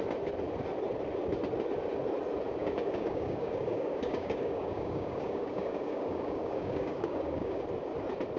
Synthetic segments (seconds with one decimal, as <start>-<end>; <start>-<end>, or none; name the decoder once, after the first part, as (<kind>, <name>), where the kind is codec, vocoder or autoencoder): 2.6-7.6 (codec, DAC)